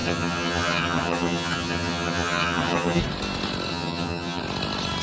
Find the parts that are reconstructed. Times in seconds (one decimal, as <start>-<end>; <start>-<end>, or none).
0.0-3.0; 3.7-4.4